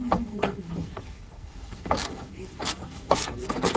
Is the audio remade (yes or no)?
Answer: yes